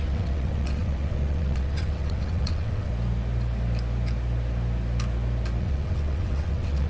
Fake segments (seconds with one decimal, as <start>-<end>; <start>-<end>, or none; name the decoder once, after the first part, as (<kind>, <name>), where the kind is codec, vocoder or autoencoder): 0.0-2.9 (vocoder, WaveNeXt); 5.6-6.9